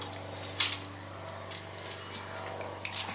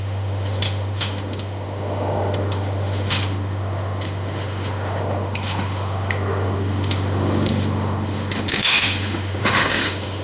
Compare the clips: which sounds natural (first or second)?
first